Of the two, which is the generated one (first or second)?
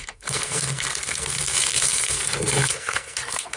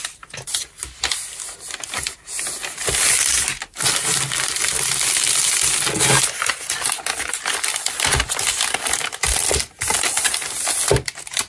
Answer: first